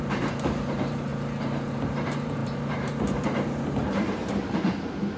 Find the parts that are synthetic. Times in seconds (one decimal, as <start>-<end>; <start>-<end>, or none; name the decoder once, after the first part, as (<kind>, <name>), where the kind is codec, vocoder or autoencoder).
0.0-1.1 (vocoder, BigVGAN v2); 1.7-4.2